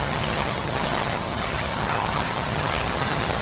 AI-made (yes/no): yes